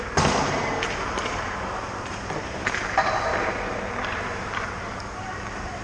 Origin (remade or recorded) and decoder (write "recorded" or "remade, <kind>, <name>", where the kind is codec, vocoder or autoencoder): remade, vocoder, BigVGAN v2